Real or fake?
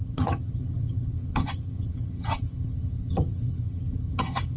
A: fake